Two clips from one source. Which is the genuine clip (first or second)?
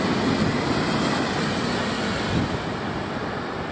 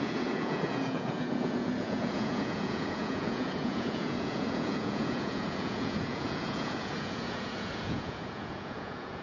first